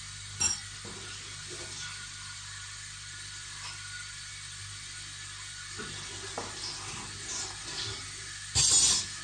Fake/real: real